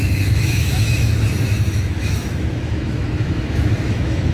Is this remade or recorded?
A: remade